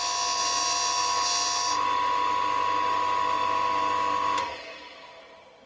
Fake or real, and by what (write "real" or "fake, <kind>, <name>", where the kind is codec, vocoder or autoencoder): real